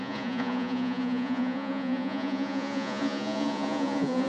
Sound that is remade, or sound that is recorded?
remade